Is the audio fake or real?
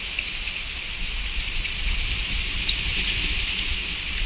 real